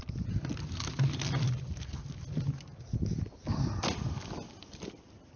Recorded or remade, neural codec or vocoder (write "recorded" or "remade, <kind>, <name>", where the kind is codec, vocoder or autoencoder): recorded